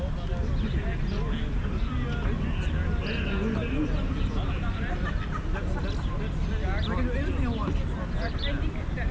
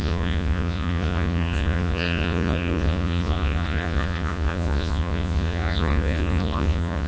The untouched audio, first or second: first